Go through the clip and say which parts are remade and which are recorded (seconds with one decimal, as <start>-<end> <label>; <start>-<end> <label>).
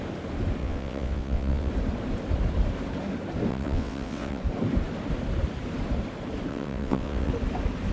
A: 0.0-0.6 recorded; 0.6-1.7 remade; 1.7-3.5 recorded; 3.5-4.4 remade; 4.4-6.5 recorded; 6.5-7.3 remade; 7.3-7.9 recorded